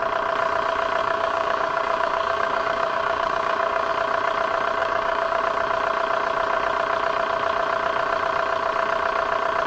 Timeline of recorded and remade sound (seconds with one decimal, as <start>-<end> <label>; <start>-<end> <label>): 0.0-1.0 recorded; 1.0-3.9 remade; 3.9-4.8 recorded; 4.8-5.4 remade; 5.4-9.7 recorded

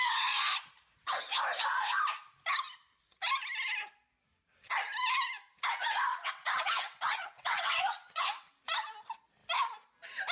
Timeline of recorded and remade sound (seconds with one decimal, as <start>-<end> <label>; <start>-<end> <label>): 0.0-6.1 recorded; 6.1-8.5 remade; 8.5-10.3 recorded

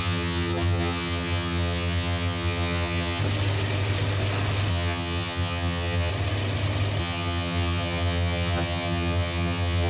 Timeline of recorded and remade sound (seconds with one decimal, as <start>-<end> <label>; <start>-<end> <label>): 0.0-3.2 remade; 3.2-4.7 recorded; 4.7-6.1 remade; 6.1-7.0 recorded; 7.0-9.9 remade

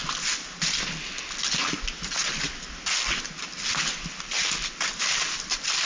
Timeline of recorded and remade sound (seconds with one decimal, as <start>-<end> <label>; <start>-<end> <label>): 0.0-5.9 recorded

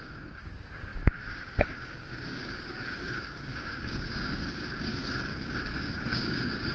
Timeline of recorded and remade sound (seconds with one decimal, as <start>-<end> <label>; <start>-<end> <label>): 0.0-6.7 remade

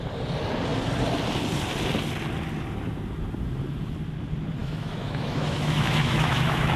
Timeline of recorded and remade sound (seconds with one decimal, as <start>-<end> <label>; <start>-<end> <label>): 0.0-4.6 recorded; 4.6-6.8 remade